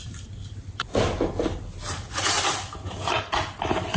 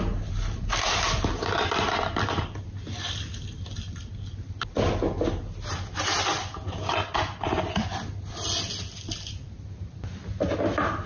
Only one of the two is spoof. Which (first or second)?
first